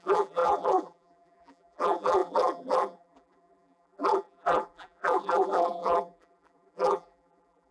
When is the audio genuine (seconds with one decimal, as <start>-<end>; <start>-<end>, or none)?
none